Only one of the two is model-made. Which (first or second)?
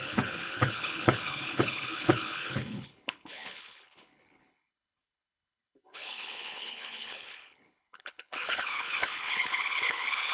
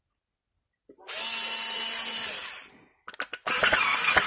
first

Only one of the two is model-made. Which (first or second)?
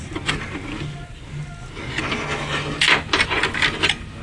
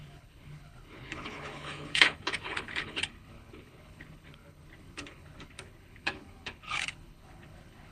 second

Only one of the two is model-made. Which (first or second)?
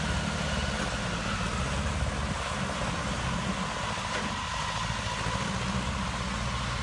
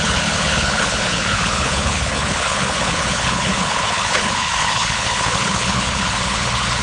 second